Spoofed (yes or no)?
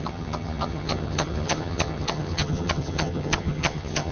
yes